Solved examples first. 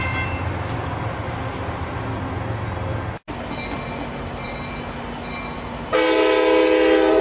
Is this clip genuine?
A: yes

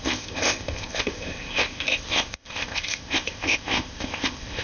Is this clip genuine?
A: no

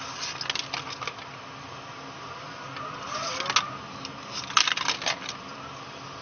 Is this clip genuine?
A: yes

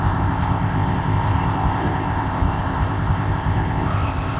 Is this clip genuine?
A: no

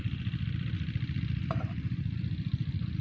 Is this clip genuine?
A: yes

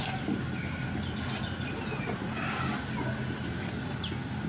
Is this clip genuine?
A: yes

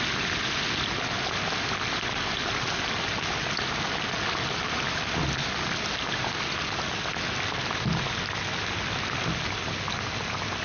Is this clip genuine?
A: yes